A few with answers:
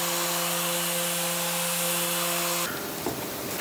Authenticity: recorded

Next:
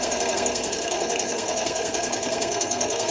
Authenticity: remade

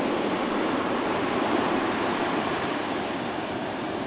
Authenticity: remade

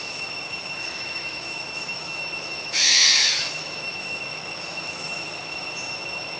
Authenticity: remade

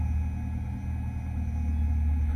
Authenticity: recorded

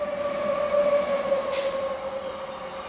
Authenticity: remade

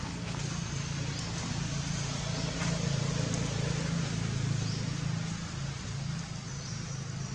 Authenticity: recorded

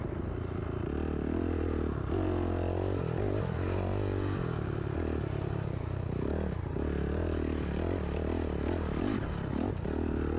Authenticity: recorded